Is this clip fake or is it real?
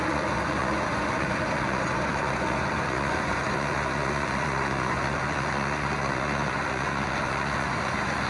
fake